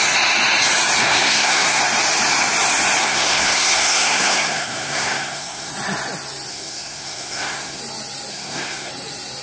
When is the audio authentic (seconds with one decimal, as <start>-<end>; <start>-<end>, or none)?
0.0-1.0; 1.8-3.0; 5.7-6.5; 7.8-8.3; 8.9-9.4